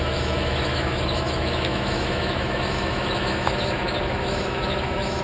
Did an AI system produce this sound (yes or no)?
yes